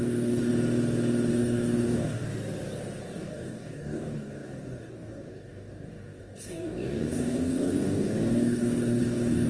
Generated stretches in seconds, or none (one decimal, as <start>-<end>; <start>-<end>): 0.0-0.5; 1.3-2.2; 3.0-9.5